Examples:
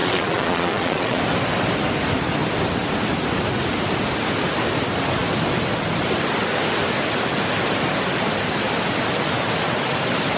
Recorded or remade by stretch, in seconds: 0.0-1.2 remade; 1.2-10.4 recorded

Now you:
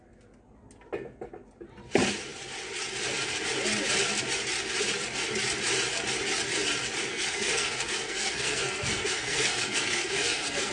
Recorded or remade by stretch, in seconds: 0.0-7.1 recorded; 7.1-10.7 remade

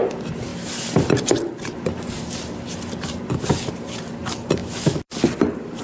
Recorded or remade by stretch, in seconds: 0.0-0.5 recorded; 0.5-3.7 remade; 3.7-4.6 recorded; 4.6-5.8 remade

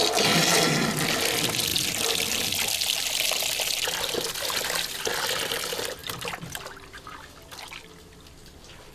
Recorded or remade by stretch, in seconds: 0.0-8.9 recorded

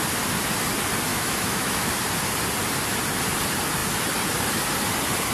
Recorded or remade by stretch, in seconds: 0.0-1.1 recorded; 1.1-1.9 remade; 1.9-5.3 recorded